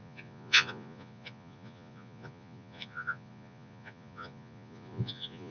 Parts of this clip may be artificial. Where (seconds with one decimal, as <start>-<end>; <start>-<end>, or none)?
0.0-5.5